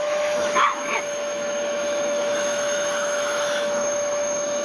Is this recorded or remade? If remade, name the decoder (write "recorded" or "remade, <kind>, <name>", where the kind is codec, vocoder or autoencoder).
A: remade, autoencoder, DAC-VAE